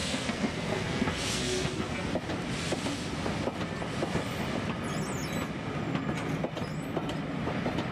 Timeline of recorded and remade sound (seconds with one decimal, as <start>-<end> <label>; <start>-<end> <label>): 0.0-2.1 remade; 2.1-7.9 recorded